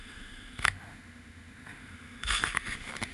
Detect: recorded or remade remade